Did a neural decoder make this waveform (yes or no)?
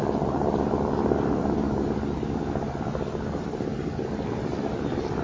no